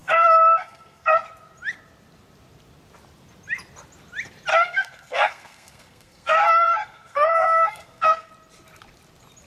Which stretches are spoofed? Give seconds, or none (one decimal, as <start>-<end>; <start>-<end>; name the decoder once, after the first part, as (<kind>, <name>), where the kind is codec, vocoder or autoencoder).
0.0-1.2 (codec, SNAC); 4.5-8.3